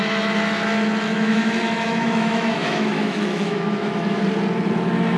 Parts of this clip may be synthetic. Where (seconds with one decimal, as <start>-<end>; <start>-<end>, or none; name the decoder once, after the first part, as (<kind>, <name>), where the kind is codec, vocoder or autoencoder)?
1.1-4.2 (autoencoder, DAC-VAE)